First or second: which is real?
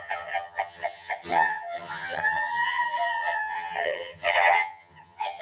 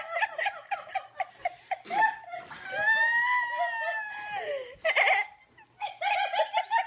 second